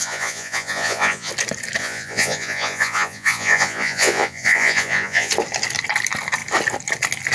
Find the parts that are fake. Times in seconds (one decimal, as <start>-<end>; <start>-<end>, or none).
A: 0.0-1.3; 1.8-5.3